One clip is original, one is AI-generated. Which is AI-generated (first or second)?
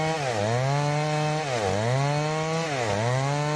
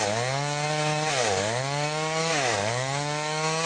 second